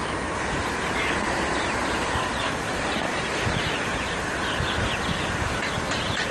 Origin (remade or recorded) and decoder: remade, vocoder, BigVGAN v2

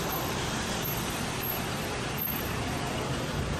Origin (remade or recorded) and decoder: remade, vocoder, BigVGAN v2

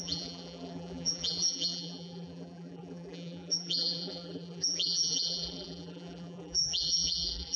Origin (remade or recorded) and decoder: remade, vocoder, BigVGAN v2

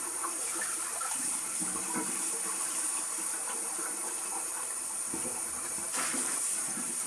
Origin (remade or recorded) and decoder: remade, vocoder, BigVGAN v2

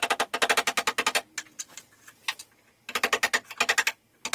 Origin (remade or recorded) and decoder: recorded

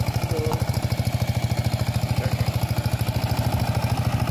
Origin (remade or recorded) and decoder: recorded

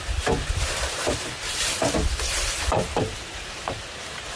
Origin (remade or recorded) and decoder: remade, vocoder, BigVGAN v2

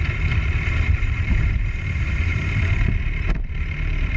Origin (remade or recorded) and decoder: remade, vocoder, BigVGAN v2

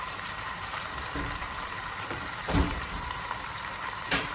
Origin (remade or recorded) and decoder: remade, vocoder, BigVGAN v2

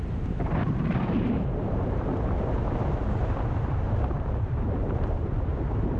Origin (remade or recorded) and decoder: remade, vocoder, BigVGAN v2